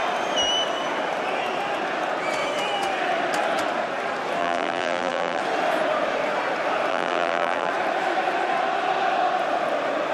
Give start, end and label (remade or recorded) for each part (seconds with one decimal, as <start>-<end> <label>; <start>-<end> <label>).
0.0-4.4 recorded; 4.4-5.4 remade; 5.4-6.9 recorded; 6.9-7.7 remade; 7.7-10.1 recorded